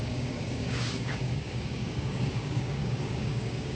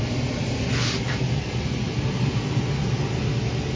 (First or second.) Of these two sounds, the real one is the second